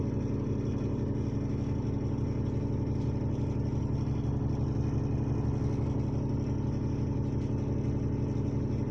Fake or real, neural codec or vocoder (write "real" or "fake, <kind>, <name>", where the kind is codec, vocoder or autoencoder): real